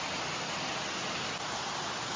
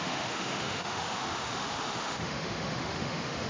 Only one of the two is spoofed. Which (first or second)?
second